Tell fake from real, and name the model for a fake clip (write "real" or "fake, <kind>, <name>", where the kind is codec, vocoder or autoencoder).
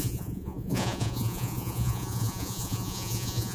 fake, vocoder, Vocos